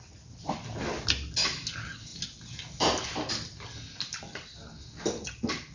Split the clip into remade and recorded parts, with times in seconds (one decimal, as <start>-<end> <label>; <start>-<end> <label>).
0.0-5.7 recorded